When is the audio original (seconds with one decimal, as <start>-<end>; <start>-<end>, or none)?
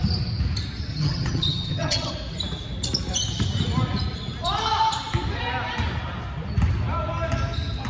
0.0-0.9; 2.1-7.9